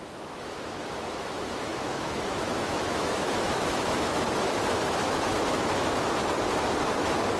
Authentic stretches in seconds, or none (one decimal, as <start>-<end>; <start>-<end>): 6.2-6.9